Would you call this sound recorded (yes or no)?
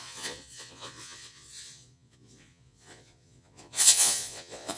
no